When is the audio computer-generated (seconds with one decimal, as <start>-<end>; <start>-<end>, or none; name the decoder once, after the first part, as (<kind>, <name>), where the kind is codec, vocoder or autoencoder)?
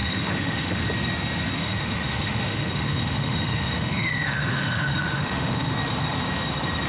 0.0-0.8 (autoencoder, DAC-VAE); 1.6-5.7